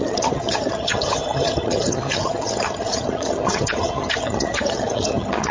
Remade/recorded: remade